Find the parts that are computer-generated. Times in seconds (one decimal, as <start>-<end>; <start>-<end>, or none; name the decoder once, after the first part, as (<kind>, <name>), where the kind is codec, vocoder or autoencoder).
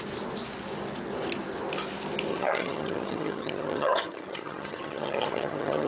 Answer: 2.3-5.9 (vocoder, HiFi-GAN)